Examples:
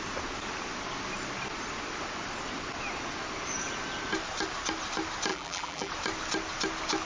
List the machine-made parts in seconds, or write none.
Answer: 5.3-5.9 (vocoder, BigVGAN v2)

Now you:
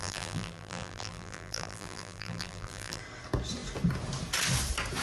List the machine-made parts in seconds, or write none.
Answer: 0.0-3.0 (vocoder, BigVGAN v2)

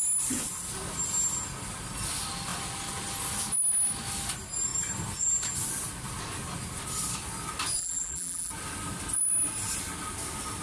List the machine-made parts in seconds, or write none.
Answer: 7.8-8.5 (vocoder, BigVGAN v2)

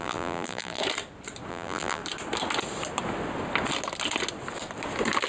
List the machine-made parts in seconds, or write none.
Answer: 0.0-0.8 (vocoder, BigVGAN v2); 1.5-2.0

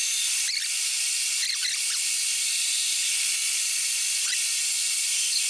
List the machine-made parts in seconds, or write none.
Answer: 2.3-4.6 (vocoder, BigVGAN v2)

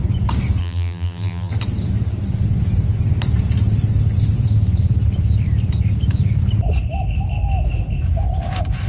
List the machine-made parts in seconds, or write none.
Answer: 0.6-1.5 (vocoder, BigVGAN v2)

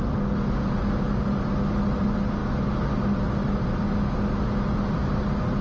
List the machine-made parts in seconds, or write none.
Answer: none

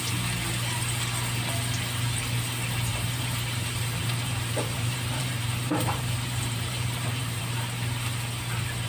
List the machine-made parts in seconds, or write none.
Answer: 2.9-7.4 (vocoder, BigVGAN v2)